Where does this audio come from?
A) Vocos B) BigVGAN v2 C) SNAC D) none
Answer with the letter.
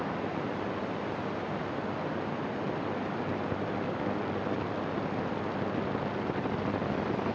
D